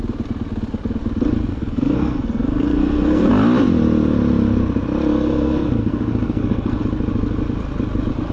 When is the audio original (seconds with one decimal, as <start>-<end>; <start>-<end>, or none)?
0.0-1.5; 3.3-5.1; 6.8-8.3